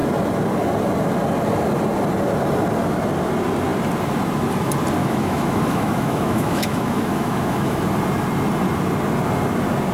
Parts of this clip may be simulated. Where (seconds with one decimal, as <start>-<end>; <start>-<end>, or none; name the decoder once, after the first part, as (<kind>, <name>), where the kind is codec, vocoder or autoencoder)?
5.0-7.8 (autoencoder, DAC-VAE)